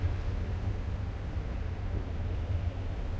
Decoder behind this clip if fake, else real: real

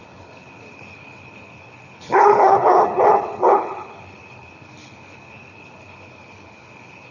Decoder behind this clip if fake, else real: fake, codec, HILCodec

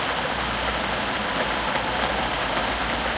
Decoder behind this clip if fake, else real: real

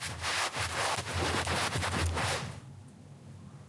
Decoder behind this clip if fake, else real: real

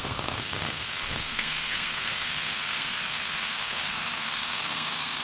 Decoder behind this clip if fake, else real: fake, codec, SNAC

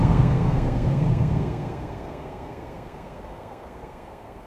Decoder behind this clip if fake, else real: fake, codec, SNAC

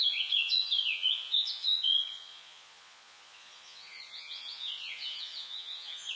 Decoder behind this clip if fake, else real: fake, vocoder, Vocos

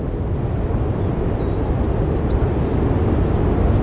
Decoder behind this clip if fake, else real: real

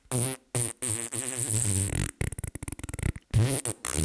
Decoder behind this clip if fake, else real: real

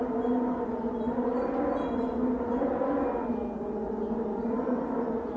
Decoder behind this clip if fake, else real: real